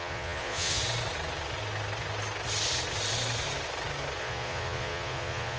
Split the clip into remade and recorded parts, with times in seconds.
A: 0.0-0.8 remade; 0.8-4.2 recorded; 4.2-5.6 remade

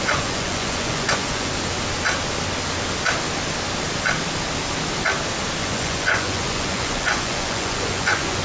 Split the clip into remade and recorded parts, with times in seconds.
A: 0.0-1.5 remade; 1.5-5.6 recorded; 5.6-8.4 remade

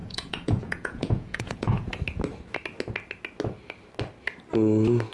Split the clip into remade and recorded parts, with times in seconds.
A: 0.0-1.9 remade; 1.9-5.1 recorded

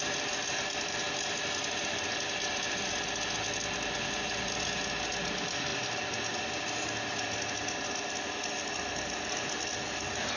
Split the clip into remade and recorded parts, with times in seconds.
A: 0.0-10.4 recorded